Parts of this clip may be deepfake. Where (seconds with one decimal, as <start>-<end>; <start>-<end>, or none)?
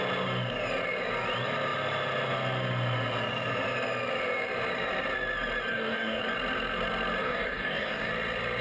5.7-6.2; 7.2-8.1